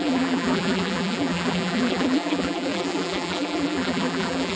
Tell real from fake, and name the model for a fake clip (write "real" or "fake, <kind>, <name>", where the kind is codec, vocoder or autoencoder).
fake, vocoder, BigVGAN v2